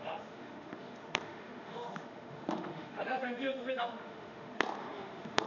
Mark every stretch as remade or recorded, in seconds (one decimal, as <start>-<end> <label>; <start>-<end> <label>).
0.0-5.5 remade